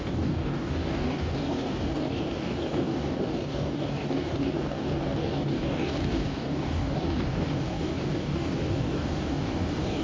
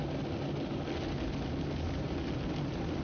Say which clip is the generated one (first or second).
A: first